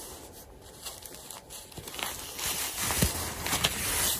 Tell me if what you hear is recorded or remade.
recorded